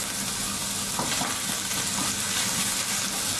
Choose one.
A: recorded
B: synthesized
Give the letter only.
A